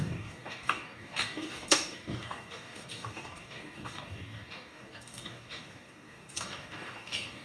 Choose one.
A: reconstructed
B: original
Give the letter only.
A